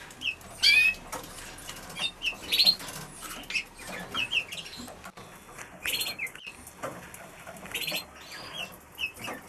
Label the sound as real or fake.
real